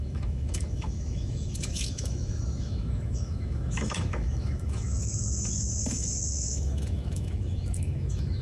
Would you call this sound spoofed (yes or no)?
yes